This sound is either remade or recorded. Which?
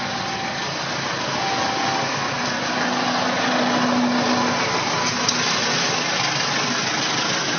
recorded